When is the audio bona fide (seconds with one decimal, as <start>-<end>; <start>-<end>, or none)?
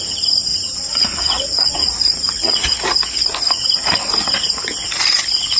0.0-0.5; 2.7-5.6